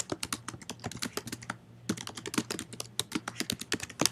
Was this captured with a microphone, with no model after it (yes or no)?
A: yes